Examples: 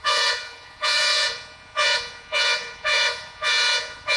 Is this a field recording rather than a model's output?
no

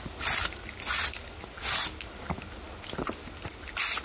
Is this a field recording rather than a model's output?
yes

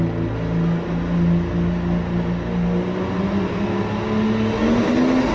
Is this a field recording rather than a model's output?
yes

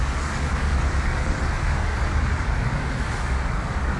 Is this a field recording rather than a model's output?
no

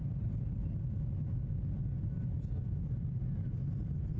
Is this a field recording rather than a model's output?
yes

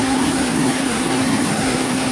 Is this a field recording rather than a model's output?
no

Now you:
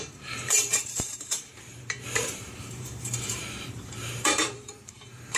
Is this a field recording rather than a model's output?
no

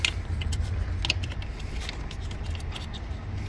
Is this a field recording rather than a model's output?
yes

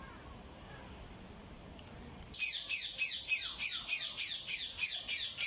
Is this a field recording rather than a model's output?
yes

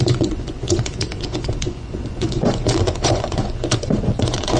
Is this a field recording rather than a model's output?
no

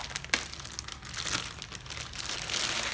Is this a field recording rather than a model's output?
yes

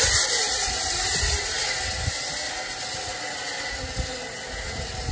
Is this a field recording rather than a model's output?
yes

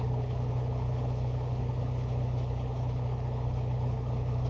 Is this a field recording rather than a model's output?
no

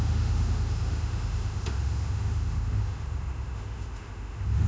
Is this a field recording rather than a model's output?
no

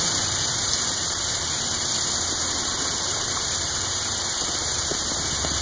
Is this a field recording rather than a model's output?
no